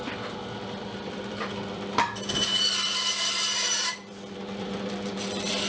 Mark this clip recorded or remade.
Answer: remade